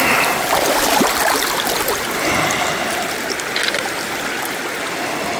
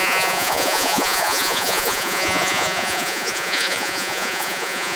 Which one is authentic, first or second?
first